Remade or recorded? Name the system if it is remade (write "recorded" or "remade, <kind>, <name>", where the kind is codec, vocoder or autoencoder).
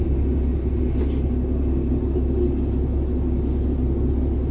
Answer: recorded